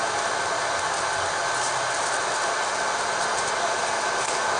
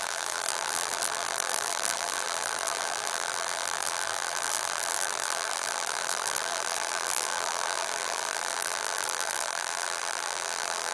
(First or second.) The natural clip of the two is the first